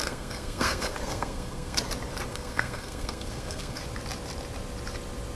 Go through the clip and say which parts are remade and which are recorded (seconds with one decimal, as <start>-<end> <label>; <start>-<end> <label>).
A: 0.0-1.8 remade; 1.8-2.3 recorded; 2.3-3.8 remade; 3.8-5.3 recorded